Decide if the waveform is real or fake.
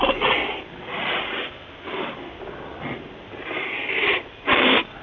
real